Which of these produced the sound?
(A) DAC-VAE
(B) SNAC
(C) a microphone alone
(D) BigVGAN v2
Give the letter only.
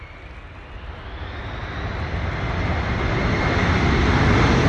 C